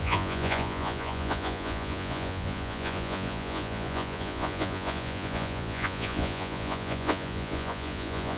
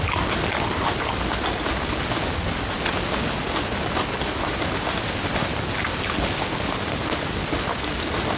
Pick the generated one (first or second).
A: first